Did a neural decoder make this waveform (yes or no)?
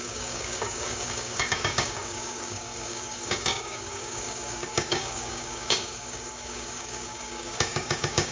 yes